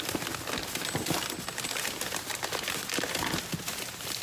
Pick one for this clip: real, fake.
real